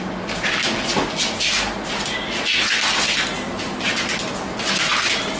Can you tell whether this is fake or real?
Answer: real